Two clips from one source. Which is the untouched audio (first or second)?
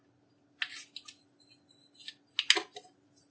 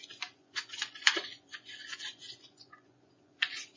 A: first